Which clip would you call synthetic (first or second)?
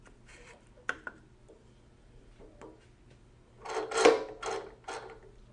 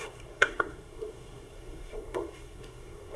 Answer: second